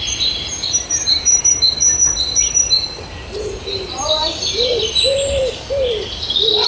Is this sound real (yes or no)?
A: no